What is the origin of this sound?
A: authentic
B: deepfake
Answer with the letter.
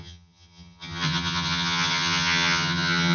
B